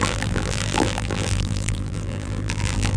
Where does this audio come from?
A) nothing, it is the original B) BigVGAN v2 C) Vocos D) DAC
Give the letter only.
B